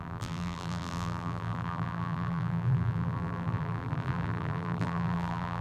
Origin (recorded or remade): remade